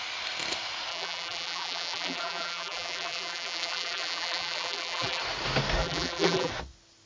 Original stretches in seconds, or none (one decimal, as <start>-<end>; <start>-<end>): 0.0-0.9; 5.2-5.8; 6.5-7.1